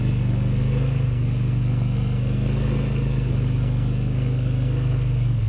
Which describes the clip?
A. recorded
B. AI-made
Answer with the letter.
B